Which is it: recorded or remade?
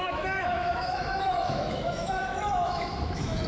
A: remade